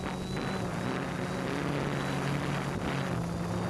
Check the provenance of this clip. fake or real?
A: real